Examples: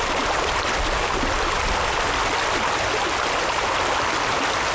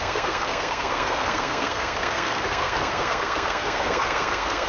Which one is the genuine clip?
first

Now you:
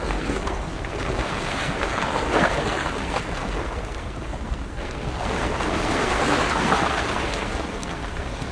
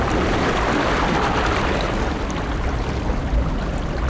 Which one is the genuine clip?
second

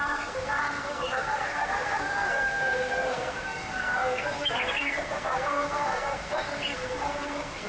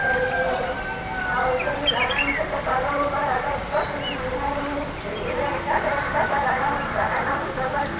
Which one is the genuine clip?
second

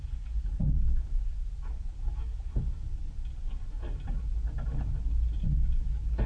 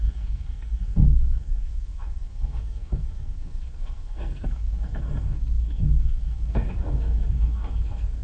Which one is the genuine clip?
first